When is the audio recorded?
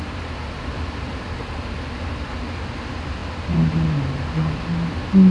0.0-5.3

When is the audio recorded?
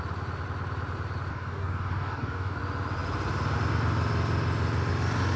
0.0-1.3; 2.6-5.4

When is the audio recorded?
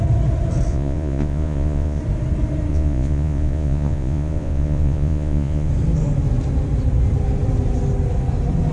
0.0-0.7; 2.0-2.7; 5.7-8.7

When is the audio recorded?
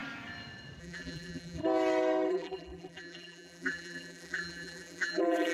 0.0-0.8; 1.6-2.3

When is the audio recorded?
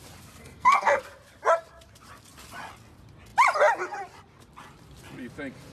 0.0-0.4; 1.0-5.7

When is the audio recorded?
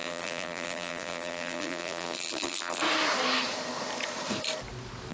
2.8-5.1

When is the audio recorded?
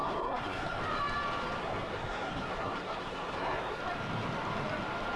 0.8-1.6; 3.8-5.2